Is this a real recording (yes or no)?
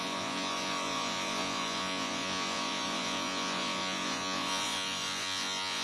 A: no